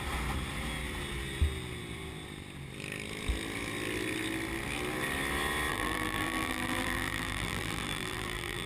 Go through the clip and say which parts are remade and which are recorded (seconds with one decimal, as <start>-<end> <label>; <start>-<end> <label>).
0.0-5.7 recorded; 5.7-8.7 remade